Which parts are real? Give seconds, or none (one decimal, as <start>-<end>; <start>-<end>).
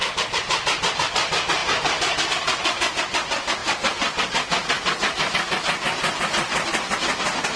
0.0-7.6